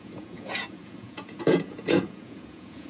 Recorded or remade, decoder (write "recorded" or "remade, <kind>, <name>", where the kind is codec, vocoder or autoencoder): remade, vocoder, Vocos